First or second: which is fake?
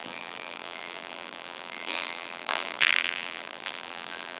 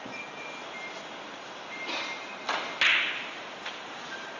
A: first